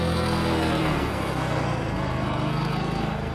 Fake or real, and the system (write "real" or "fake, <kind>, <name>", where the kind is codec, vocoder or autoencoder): fake, codec, SNAC